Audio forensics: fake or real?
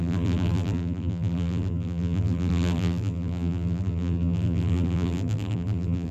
fake